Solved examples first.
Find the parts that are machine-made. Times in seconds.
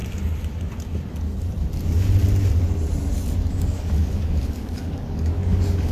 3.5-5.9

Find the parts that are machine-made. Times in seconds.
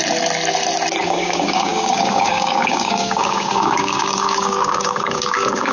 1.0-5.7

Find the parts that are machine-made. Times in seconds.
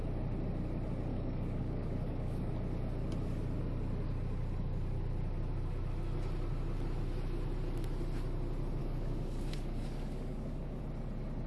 1.1-2.5; 8.8-10.8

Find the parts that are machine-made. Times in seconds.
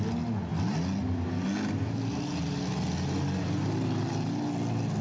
none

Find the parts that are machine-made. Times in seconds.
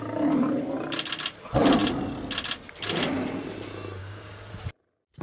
4.0-4.5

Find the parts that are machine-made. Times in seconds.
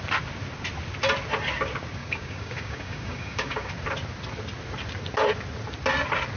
2.0-3.7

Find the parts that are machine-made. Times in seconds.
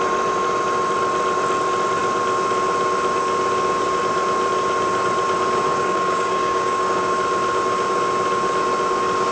5.7-7.1